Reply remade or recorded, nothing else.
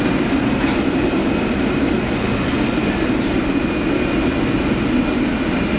recorded